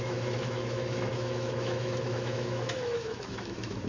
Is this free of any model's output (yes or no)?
no